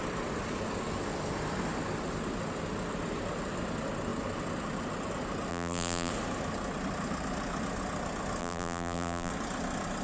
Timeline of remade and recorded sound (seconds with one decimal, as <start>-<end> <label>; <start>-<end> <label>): 0.0-5.5 recorded; 5.5-6.1 remade; 6.1-8.4 recorded; 8.4-9.3 remade; 9.3-10.0 recorded